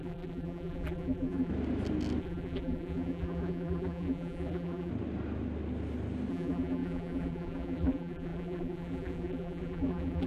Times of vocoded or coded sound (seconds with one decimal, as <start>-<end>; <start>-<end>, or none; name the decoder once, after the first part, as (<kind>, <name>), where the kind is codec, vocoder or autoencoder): 0.0-1.5 (vocoder, BigVGAN v2); 2.2-4.9; 6.3-10.3